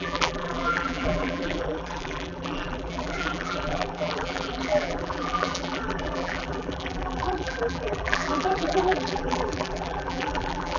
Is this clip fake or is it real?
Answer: fake